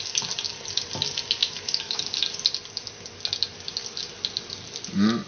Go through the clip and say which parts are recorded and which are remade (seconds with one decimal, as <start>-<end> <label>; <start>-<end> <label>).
0.0-1.4 recorded; 1.4-2.0 remade; 2.0-5.3 recorded